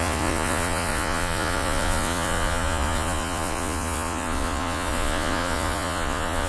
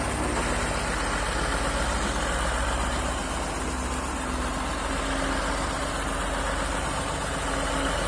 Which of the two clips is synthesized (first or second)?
first